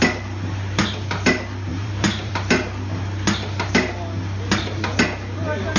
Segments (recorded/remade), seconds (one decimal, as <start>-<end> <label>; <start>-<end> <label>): 0.0-1.7 recorded; 1.7-2.3 remade; 2.3-5.8 recorded